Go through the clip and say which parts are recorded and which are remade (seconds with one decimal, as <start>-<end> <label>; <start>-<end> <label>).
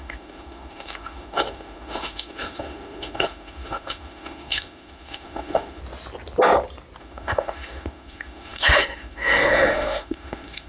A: 0.0-5.8 remade; 5.8-7.0 recorded; 7.0-10.7 remade